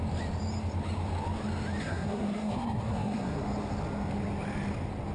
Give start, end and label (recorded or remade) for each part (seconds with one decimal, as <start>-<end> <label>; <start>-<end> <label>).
0.0-1.8 recorded; 1.8-3.4 remade; 3.4-5.1 recorded